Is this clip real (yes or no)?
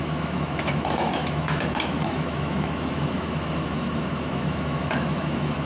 no